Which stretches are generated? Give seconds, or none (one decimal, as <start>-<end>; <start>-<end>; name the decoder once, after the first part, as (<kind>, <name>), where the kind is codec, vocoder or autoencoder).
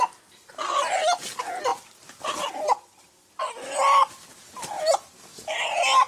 none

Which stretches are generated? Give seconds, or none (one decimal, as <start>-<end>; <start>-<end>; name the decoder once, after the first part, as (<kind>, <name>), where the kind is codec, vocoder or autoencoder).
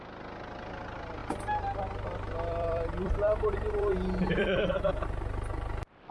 1.2-4.9 (vocoder, BigVGAN v2)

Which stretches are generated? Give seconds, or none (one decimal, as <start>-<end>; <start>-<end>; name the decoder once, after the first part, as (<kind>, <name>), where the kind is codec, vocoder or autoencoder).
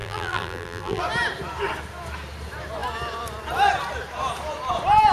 0.0-1.0 (vocoder, BigVGAN v2)